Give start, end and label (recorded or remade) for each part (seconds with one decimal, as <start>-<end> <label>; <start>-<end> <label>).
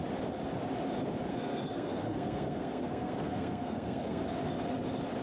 0.0-1.3 recorded; 1.3-4.2 remade; 4.2-5.2 recorded